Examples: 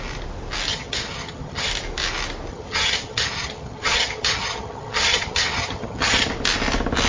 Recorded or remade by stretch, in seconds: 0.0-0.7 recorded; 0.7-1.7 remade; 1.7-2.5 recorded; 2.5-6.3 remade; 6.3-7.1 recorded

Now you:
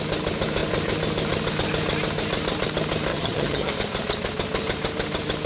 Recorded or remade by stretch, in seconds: 0.0-3.1 recorded; 3.1-3.7 remade; 3.7-5.5 recorded

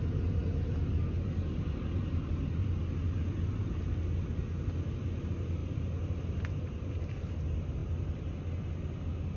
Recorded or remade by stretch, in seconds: 0.0-9.4 recorded

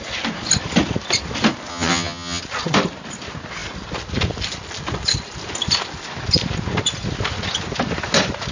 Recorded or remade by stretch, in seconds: 0.0-1.7 recorded; 1.7-2.4 remade; 2.4-8.5 recorded

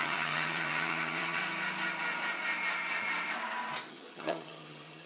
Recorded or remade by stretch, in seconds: 0.0-1.4 remade; 1.4-3.9 recorded; 3.9-5.1 remade

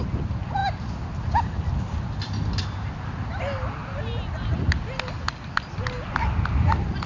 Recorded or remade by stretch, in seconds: 0.0-7.1 recorded

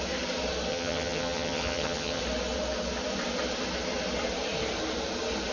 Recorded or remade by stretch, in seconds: 0.0-0.7 recorded; 0.7-2.2 remade; 2.2-5.5 recorded

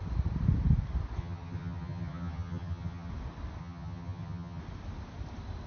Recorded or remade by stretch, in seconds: 0.0-1.2 recorded; 1.2-3.1 remade; 3.1-3.6 recorded; 3.6-4.6 remade; 4.6-5.7 recorded